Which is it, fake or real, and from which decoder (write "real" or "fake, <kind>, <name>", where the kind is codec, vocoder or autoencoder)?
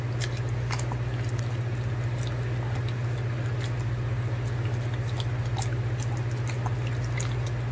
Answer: real